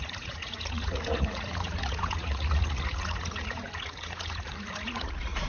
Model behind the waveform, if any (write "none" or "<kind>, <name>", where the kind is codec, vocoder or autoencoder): vocoder, Vocos